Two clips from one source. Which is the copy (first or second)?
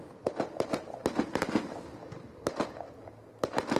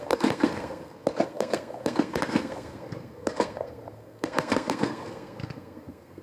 second